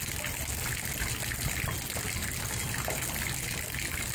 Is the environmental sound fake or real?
real